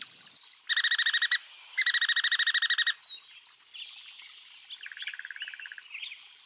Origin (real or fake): real